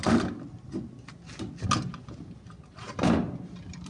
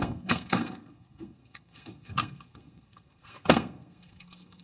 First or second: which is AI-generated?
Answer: second